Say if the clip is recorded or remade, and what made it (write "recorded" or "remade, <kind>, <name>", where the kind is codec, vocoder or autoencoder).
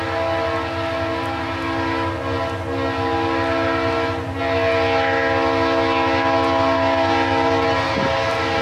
recorded